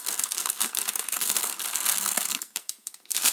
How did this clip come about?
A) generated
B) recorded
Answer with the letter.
A